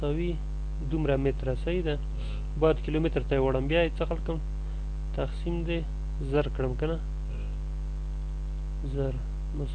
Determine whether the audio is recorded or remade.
recorded